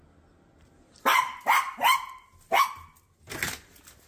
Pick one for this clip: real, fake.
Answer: real